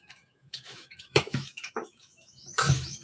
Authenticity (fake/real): fake